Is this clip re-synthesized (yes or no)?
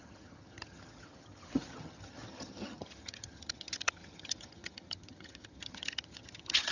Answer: yes